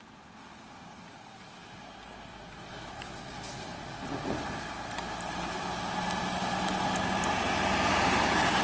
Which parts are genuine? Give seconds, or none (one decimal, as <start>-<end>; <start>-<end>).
0.0-8.6